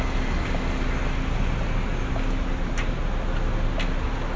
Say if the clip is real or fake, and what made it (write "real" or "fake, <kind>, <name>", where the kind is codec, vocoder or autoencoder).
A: real